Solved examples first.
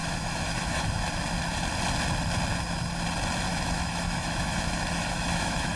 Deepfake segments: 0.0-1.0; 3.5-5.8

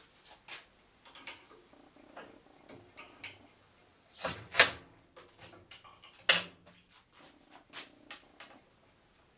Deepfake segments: 3.9-4.5

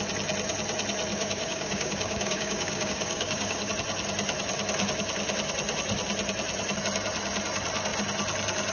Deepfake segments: 1.1-3.7